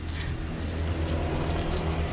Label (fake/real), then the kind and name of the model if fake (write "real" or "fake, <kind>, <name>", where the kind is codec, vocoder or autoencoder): real